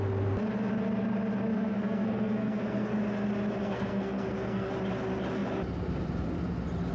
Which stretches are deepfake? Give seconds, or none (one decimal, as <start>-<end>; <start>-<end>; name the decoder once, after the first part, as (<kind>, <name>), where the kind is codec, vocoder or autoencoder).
1.5-2.9 (codec, SNAC); 3.6-4.7